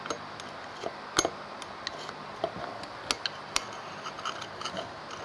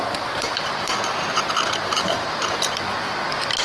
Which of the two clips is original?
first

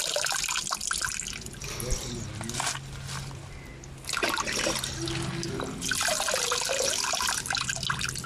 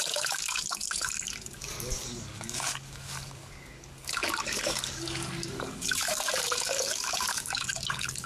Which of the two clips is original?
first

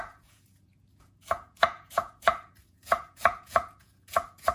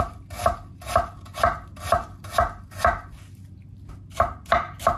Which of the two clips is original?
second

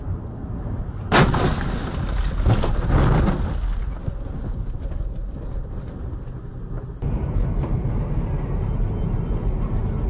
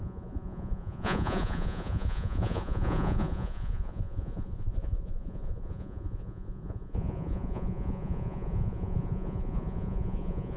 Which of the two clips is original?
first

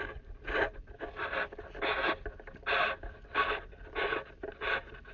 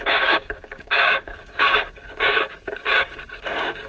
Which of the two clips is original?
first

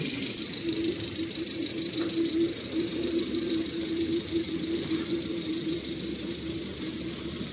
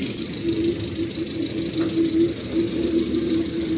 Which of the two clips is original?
second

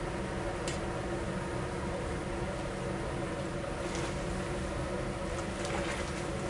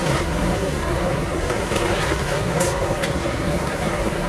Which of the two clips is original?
first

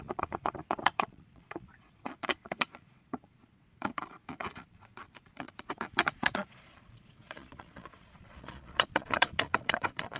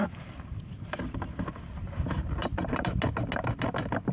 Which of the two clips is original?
second